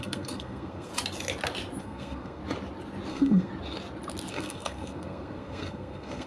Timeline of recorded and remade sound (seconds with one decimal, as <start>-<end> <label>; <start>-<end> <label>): 0.0-0.9 remade; 0.9-1.8 recorded; 1.8-2.4 remade; 2.4-3.1 recorded; 3.1-3.5 remade; 3.5-4.3 recorded; 4.3-6.3 remade